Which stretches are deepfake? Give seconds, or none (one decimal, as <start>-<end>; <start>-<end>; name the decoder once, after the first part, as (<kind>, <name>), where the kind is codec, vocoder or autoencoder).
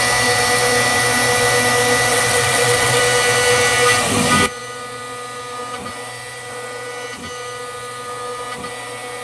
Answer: 2.1-3.0 (vocoder, WaveNeXt)